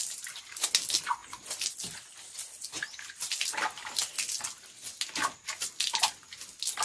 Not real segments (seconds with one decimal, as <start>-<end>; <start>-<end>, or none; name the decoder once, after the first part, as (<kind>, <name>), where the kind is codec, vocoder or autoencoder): none